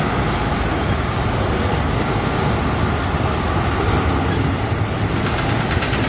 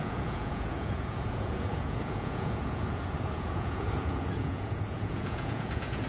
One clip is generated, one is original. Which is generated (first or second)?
second